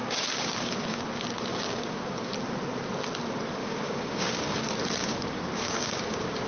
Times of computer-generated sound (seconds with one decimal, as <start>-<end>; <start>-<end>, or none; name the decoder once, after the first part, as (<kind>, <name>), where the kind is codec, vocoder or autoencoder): 0.0-1.0 (codec, DAC); 1.5-2.3; 3.6-4.6; 5.0-6.5